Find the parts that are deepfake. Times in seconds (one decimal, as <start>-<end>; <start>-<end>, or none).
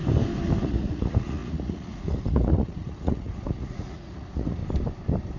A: 0.6-4.6